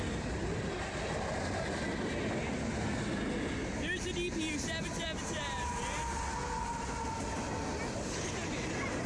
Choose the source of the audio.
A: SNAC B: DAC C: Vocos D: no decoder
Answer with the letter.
D